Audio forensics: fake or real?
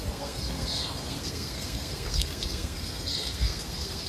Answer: fake